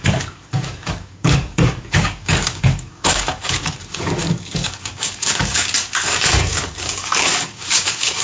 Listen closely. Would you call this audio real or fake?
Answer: fake